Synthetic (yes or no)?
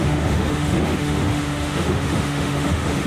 yes